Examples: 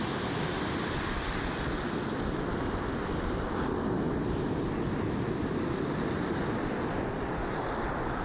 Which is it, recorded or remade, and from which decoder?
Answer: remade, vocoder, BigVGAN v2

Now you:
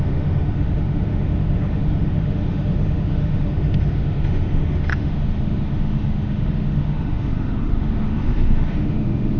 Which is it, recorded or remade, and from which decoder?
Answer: remade, autoencoder, DAC-VAE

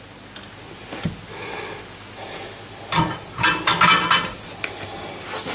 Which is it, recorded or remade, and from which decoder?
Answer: recorded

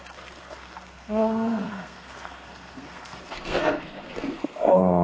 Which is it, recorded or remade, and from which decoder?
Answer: remade, codec, SNAC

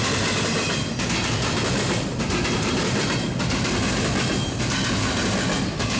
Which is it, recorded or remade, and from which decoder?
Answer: recorded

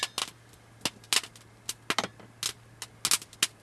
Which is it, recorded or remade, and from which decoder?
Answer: recorded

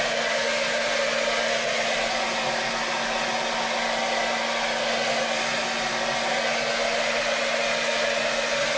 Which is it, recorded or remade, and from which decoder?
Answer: recorded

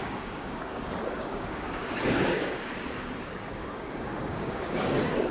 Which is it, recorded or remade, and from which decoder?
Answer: remade, codec, DAC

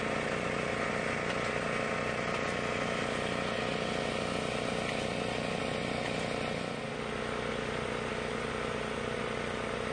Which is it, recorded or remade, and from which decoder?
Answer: recorded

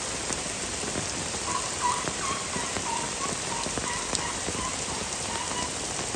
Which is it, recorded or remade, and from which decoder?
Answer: recorded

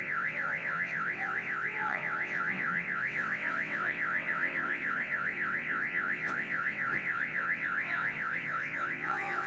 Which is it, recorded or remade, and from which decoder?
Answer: remade, vocoder, WaveNeXt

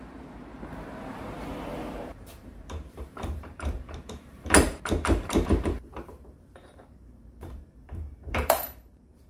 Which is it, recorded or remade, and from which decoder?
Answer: remade, vocoder, BigVGAN v2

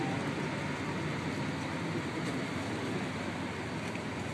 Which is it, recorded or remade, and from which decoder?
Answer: recorded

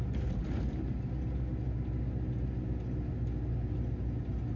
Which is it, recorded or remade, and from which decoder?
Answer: recorded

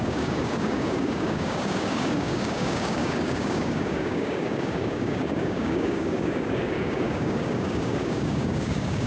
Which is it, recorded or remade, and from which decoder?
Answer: remade, codec, DAC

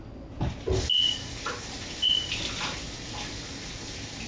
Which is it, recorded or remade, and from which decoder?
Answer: recorded